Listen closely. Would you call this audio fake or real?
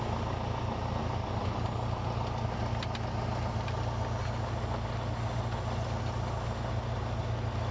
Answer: real